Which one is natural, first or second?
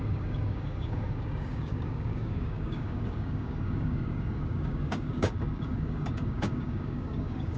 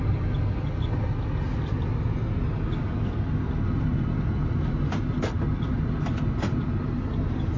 second